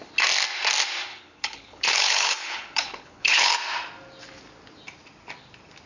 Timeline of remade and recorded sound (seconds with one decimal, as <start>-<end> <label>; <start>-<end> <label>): 0.0-1.1 recorded; 1.1-3.5 remade; 3.5-5.9 recorded